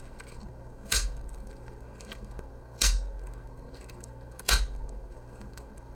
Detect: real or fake fake